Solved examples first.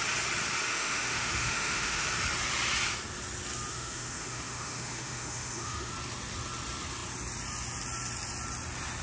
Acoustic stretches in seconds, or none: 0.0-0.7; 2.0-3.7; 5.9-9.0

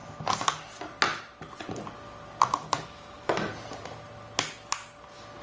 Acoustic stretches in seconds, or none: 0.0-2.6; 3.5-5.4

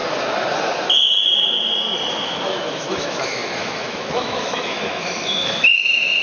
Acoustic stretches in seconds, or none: 0.0-2.1

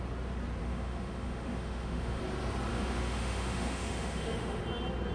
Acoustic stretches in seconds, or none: 0.0-0.6; 2.2-2.7; 4.6-5.1

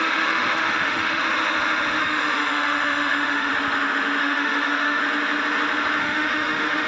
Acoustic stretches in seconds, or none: 1.2-2.0; 3.5-4.2; 5.0-6.0